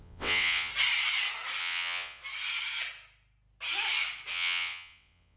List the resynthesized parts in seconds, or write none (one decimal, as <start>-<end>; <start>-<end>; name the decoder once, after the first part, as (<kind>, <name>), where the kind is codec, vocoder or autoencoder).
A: 0.0-0.7 (vocoder, WaveNeXt); 1.6-2.2; 4.3-5.4